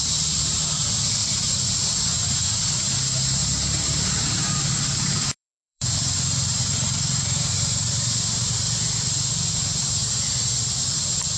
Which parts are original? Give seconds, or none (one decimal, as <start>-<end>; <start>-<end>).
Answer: 0.0-1.2; 1.9-4.4; 9.3-11.4